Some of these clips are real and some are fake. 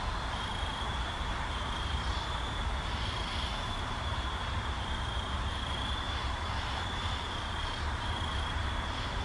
fake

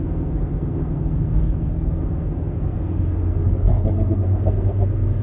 fake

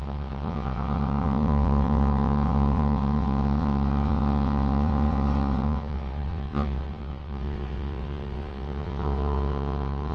fake